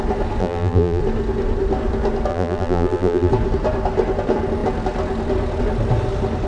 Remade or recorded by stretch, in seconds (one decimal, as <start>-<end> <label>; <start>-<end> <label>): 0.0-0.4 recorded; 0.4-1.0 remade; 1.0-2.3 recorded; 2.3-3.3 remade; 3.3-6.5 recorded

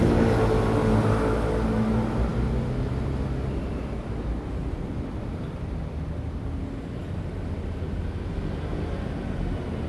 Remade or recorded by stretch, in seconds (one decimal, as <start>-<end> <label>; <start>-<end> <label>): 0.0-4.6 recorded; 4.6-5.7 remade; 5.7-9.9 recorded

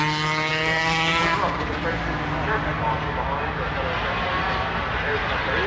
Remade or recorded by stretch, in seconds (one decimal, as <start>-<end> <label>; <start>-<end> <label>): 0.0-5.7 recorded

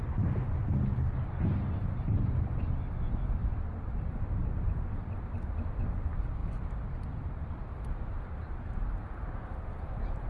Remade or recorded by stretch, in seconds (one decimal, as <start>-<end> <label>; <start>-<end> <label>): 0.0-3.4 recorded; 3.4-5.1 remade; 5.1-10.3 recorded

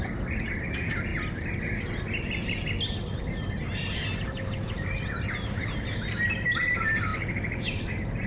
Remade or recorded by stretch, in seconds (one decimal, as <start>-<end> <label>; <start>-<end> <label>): 0.0-1.1 remade; 1.1-6.1 recorded; 6.1-8.3 remade

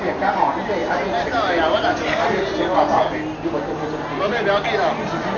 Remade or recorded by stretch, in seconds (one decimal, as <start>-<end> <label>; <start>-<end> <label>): 0.0-5.4 recorded

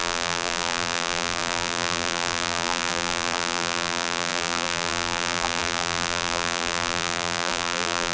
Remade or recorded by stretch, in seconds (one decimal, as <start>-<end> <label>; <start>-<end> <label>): 0.0-8.1 remade